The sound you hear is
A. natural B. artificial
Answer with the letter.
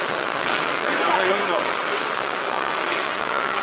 B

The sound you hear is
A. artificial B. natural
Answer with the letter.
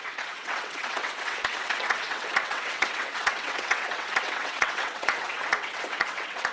A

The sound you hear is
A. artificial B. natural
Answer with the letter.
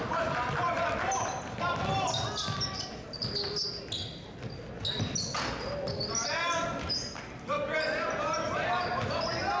B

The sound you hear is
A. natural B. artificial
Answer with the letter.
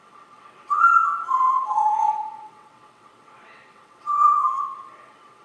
B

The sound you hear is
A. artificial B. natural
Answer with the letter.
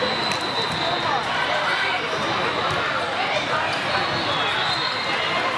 B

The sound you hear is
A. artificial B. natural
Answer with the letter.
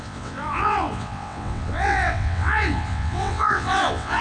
A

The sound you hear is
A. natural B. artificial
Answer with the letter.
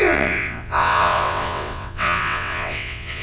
B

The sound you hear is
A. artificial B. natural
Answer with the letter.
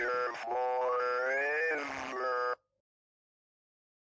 B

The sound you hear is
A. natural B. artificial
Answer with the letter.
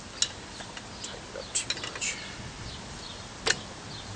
A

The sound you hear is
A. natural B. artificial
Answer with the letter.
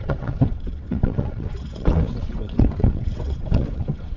B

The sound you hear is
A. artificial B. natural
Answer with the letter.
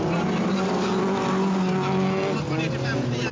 B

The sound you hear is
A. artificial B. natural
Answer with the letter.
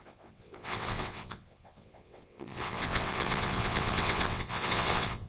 A